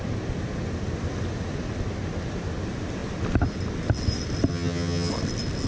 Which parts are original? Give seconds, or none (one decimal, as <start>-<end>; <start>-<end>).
0.0-4.5; 5.1-5.7